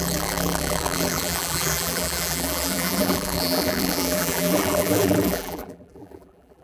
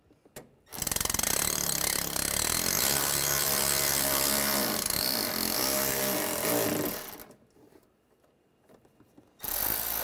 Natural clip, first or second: second